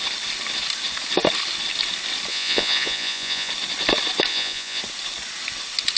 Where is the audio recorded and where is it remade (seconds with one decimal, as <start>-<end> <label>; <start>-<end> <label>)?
0.0-2.3 recorded; 2.3-3.5 remade; 3.5-4.3 recorded; 4.3-4.8 remade; 4.8-6.0 recorded